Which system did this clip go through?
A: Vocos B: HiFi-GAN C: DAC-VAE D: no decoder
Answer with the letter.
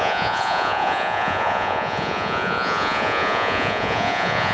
A